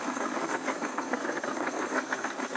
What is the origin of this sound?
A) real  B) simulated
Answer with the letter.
B